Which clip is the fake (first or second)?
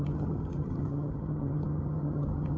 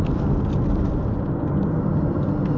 first